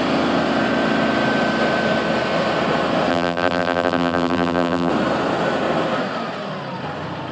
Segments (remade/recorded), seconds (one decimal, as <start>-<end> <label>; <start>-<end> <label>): 0.0-3.1 recorded; 3.1-4.9 remade; 4.9-7.3 recorded